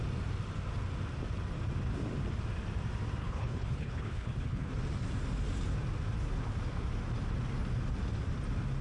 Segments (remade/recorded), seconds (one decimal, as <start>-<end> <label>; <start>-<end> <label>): 0.0-3.2 recorded; 3.2-4.7 remade; 4.7-8.8 recorded